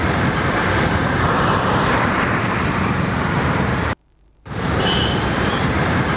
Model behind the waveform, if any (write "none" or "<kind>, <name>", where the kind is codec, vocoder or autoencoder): vocoder, BigVGAN v2